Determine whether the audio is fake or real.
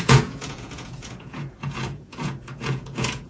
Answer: fake